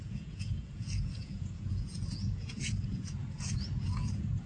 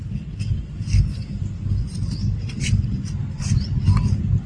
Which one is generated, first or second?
first